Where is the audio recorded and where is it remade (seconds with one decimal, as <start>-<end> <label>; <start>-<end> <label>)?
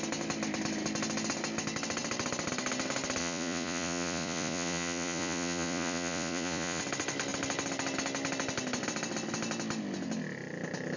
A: 0.0-3.2 recorded; 3.2-6.8 remade; 6.8-11.0 recorded